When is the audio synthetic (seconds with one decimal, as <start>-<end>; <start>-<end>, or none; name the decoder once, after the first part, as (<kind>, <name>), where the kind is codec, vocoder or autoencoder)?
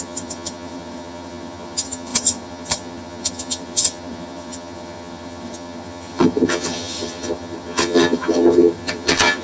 0.0-9.4 (vocoder, HiFi-GAN)